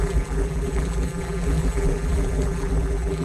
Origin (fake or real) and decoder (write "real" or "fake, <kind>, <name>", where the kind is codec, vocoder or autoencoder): fake, vocoder, BigVGAN v2